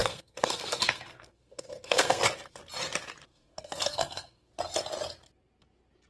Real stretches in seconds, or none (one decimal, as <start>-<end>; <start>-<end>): 2.2-3.3; 4.5-6.1